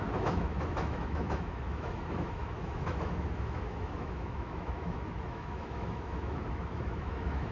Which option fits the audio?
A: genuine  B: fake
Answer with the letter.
B